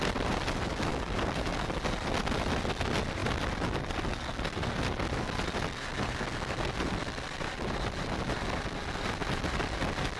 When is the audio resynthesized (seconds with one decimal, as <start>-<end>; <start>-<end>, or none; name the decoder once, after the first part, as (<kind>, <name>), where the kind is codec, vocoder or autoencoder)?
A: 0.9-1.8 (codec, DAC)